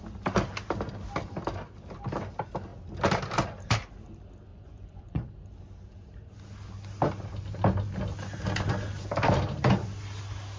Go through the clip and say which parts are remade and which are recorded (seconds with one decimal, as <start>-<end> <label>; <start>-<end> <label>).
0.0-4.5 recorded; 4.5-5.3 remade; 5.3-10.6 recorded